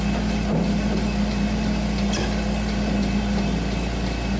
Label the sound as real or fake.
real